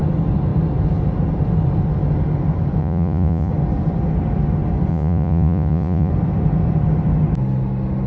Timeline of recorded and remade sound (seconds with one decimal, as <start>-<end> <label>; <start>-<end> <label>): 0.0-2.8 recorded; 2.8-3.5 remade; 3.5-4.9 recorded; 4.9-6.1 remade; 6.1-8.1 recorded